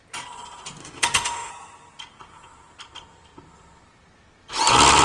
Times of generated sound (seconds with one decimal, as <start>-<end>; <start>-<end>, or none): 0.8-1.5